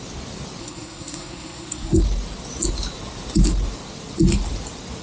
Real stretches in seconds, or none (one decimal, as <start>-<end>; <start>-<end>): 0.0-0.6; 2.0-5.0